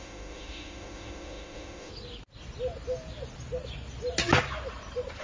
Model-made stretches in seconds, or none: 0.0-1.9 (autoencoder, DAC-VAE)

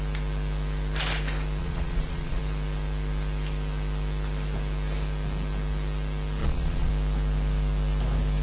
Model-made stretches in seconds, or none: 1.6-2.4 (vocoder, Vocos); 6.4-6.9

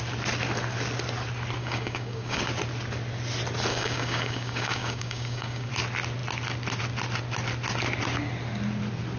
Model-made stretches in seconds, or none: 1.6-2.4 (codec, DAC); 3.7-5.7

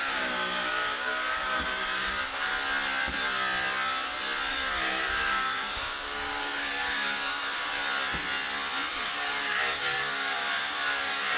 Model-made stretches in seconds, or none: 0.0-2.5 (codec, DAC); 4.5-7.8; 8.9-11.4

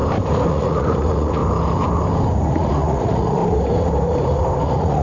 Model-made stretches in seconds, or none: 0.5-1.4 (vocoder, Vocos); 2.5-3.4; 4.6-5.0

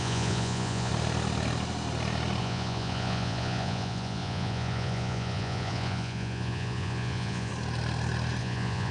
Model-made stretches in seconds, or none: 0.0-0.9 (vocoder, Vocos); 2.4-7.5; 8.4-8.9

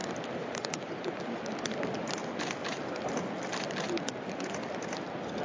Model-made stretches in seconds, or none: 0.0-1.1 (vocoder, BigVGAN v2); 2.6-3.1